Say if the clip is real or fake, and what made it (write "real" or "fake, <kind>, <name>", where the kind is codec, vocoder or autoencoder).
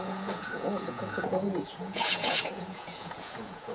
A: fake, vocoder, Vocos